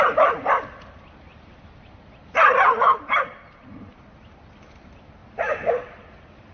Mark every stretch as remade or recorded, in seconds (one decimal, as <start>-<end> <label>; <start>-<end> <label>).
0.0-6.5 recorded